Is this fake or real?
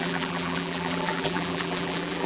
fake